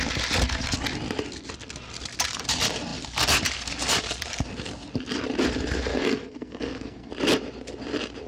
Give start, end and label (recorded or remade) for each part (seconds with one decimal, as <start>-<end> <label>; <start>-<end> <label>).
0.0-5.9 recorded; 5.9-7.1 remade; 7.1-8.3 recorded